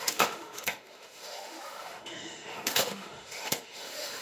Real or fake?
fake